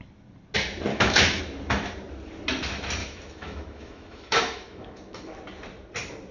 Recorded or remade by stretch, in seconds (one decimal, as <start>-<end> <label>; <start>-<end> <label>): 0.0-0.9 recorded; 0.9-1.4 remade; 1.4-3.0 recorded; 3.0-5.4 remade; 5.4-6.3 recorded